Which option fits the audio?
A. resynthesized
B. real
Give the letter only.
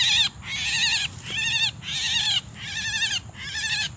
B